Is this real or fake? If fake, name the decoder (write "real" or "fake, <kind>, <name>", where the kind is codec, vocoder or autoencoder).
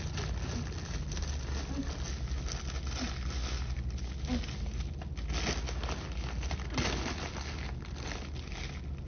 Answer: real